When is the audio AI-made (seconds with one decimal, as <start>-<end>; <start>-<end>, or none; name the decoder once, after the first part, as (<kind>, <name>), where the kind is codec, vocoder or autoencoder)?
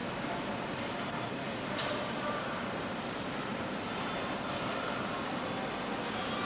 0.0-5.3 (vocoder, BigVGAN v2)